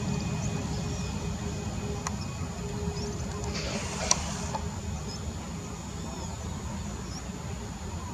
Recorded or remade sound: recorded